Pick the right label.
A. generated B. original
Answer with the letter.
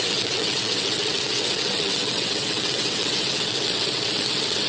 A